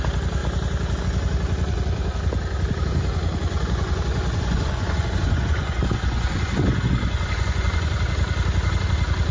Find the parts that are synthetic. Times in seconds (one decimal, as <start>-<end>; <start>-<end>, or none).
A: 3.5-8.0

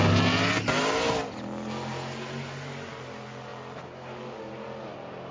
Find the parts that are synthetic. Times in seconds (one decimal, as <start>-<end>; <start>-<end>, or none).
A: none

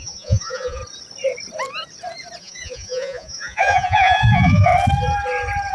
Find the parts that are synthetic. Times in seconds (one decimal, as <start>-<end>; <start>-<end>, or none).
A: 0.0-0.8; 2.4-4.7

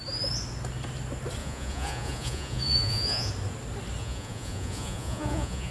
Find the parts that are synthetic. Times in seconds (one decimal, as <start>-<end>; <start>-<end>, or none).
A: 1.4-3.3; 4.0-5.7

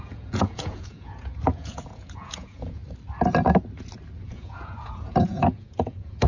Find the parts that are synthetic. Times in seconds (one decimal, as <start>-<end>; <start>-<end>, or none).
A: 0.0-2.8; 4.2-6.3